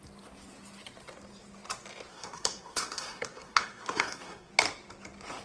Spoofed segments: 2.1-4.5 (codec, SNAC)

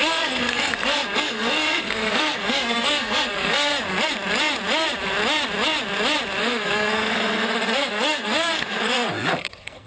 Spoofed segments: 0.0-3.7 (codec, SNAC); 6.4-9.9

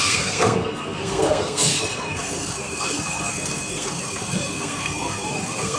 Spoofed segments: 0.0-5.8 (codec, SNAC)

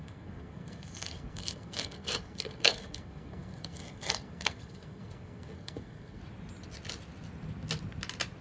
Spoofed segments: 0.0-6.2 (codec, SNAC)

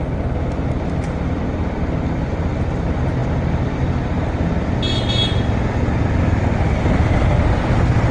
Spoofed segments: none

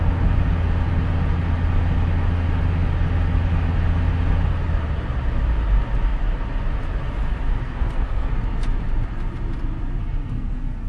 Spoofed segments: 7.5-8.3 (codec, SNAC); 10.0-10.9

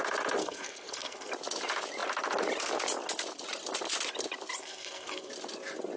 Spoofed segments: 0.4-1.3 (codec, SNAC); 4.6-5.3